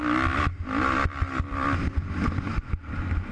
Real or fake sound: real